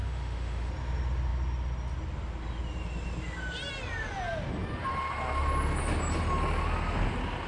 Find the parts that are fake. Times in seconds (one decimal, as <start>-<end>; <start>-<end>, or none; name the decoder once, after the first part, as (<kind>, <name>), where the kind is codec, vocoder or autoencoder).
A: 0.0-0.7 (autoencoder, DAC-VAE)